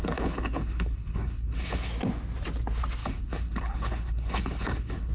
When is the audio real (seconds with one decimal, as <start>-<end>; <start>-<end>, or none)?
1.9-3.0